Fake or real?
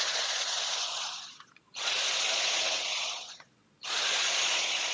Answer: fake